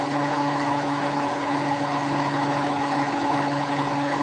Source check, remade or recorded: remade